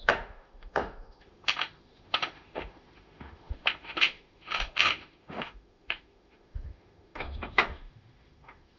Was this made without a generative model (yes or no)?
no